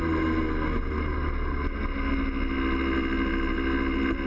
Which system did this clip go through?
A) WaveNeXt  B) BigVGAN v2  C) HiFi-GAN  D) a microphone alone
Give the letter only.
D